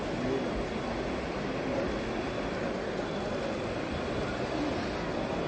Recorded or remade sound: recorded